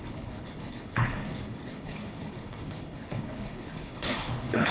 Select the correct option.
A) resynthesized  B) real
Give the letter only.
A